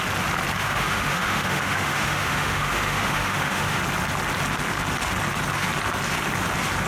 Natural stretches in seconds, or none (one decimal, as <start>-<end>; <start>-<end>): 0.0-0.6; 3.8-6.9